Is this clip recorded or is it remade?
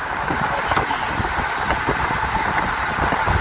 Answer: recorded